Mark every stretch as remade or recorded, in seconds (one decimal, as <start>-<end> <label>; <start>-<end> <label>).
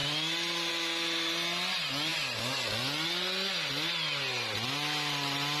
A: 0.0-5.6 recorded